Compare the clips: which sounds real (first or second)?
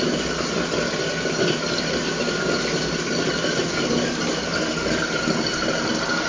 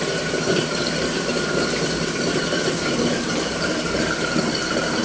first